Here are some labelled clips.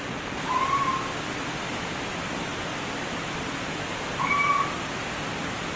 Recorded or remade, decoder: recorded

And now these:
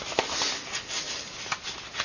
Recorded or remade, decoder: recorded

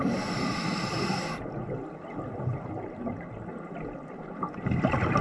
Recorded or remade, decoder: recorded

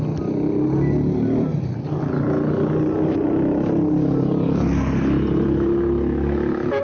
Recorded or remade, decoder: recorded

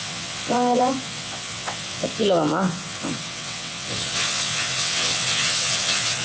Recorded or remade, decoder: remade, vocoder, WaveNeXt